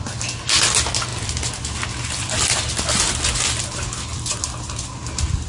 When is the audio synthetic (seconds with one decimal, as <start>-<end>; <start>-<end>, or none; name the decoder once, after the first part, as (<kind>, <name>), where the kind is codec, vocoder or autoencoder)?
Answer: none